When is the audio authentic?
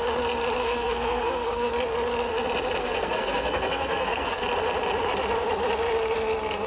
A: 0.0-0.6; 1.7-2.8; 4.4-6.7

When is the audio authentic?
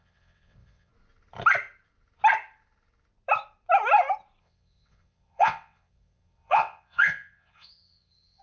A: 0.9-4.4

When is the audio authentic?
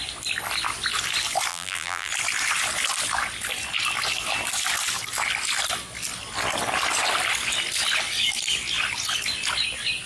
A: 0.0-1.5; 2.1-10.1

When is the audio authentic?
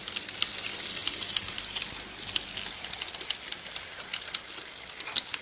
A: 0.0-5.4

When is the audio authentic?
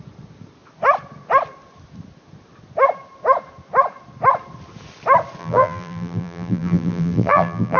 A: 0.0-5.4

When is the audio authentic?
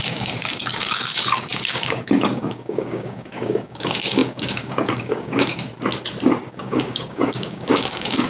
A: 5.7-6.5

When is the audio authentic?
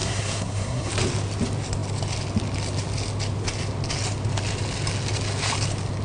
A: 0.9-6.0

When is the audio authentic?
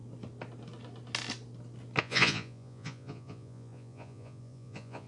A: 0.0-2.0